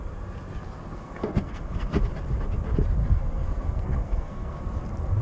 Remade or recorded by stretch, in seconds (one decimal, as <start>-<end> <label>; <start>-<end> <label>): 0.0-0.8 recorded; 0.8-2.0 remade; 2.0-3.0 recorded; 3.0-4.6 remade; 4.6-5.2 recorded